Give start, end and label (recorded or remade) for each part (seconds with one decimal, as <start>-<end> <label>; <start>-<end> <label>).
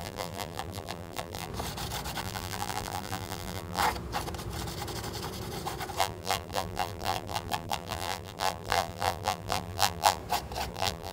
0.0-1.5 remade; 1.5-2.2 recorded; 2.2-3.8 remade; 3.8-6.0 recorded; 6.0-10.2 remade; 10.2-10.7 recorded; 10.7-11.1 remade